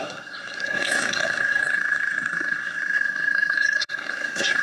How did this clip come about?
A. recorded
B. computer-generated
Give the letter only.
B